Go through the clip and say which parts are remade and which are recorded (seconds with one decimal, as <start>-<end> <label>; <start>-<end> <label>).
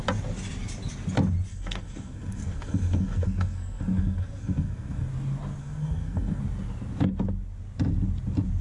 0.0-1.5 recorded; 1.5-5.1 remade; 5.1-5.6 recorded; 5.6-6.4 remade; 6.4-8.6 recorded